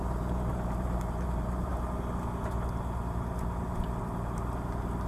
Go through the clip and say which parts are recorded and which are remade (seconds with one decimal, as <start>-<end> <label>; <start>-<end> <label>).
0.0-1.7 remade; 1.7-4.0 recorded; 4.0-5.1 remade